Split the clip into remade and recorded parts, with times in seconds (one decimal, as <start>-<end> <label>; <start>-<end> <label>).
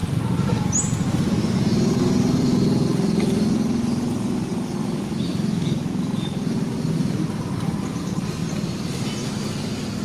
0.0-5.3 recorded; 5.3-7.2 remade; 7.2-10.0 recorded